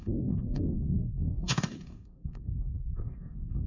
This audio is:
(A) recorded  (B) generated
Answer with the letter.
B